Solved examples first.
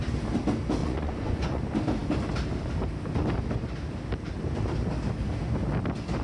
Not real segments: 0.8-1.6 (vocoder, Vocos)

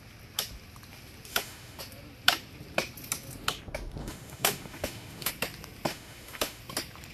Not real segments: 1.3-1.8 (autoencoder, DAC-VAE); 4.0-5.3; 5.9-6.6

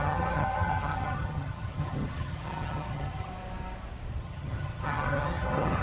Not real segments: 0.0-3.3 (vocoder, HiFi-GAN); 4.2-5.8

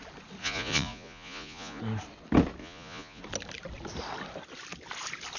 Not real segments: 0.4-1.8 (vocoder, Vocos); 2.6-3.2

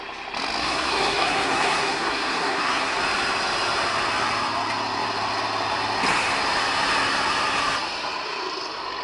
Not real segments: 0.6-3.0 (codec, SNAC)

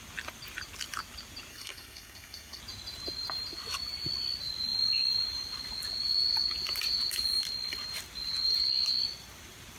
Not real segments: 1.5-2.6 (codec, SNAC)